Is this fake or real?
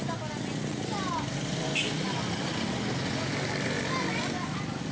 real